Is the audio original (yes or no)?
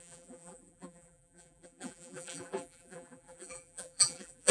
no